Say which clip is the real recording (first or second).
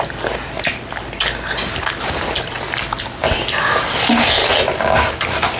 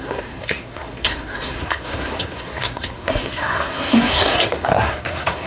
first